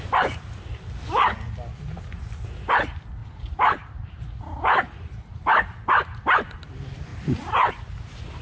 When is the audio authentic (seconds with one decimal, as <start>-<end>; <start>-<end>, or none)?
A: 0.0-3.2; 4.2-8.4